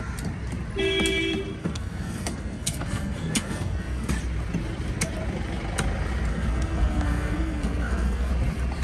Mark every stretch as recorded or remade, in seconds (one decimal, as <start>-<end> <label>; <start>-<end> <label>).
0.0-1.6 recorded; 1.6-4.1 remade; 4.1-6.3 recorded; 6.3-8.3 remade; 8.3-8.8 recorded